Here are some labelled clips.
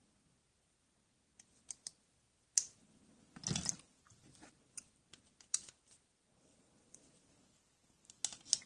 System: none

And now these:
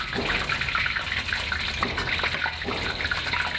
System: none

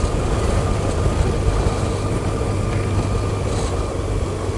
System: none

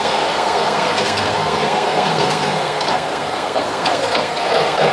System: codec, SNAC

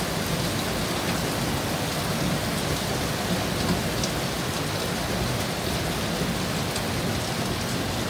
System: none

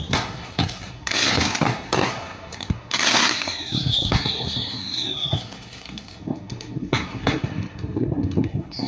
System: codec, SNAC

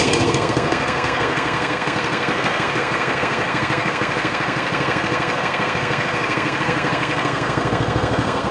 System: codec, SNAC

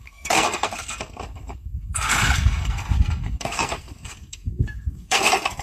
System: codec, SNAC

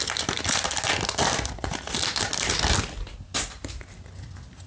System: none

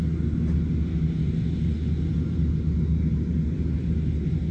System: none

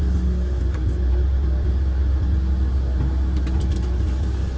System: none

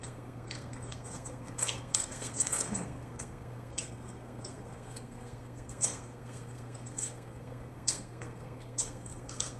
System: codec, SNAC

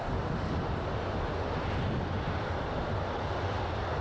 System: none